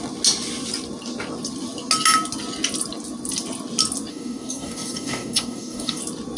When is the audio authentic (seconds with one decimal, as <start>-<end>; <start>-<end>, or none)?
0.0-4.1; 6.0-6.4